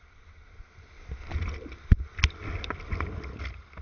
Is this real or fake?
real